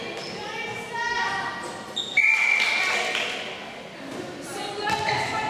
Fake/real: real